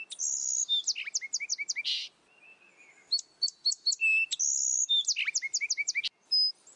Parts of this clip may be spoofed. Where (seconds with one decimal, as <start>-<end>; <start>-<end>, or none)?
none